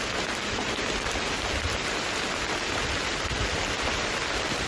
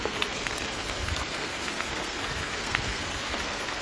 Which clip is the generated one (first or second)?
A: second